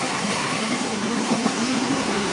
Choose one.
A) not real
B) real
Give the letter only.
A